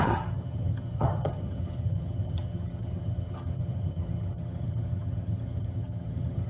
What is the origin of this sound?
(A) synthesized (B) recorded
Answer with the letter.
A